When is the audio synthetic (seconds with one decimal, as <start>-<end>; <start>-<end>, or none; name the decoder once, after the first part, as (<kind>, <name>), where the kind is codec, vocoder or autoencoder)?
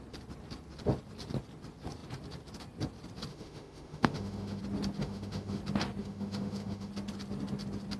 3.3-4.6 (autoencoder, DAC-VAE); 5.0-5.6; 6.0-6.9